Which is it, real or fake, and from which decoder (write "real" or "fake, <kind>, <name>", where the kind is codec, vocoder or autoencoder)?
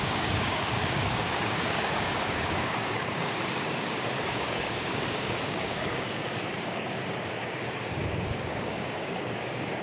fake, codec, DAC